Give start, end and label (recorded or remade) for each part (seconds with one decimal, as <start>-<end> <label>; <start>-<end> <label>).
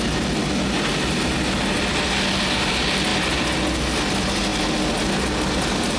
0.0-6.0 recorded